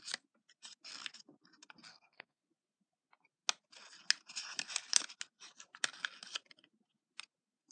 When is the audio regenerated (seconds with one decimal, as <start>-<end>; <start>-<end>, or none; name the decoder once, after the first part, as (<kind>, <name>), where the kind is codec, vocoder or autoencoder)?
1.9-2.4 (codec, SNAC)